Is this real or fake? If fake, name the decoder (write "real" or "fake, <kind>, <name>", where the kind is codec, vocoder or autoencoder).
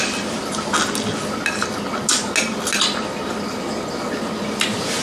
real